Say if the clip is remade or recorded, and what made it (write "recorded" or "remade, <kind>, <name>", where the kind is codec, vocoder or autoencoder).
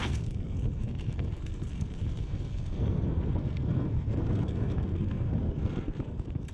remade, codec, SNAC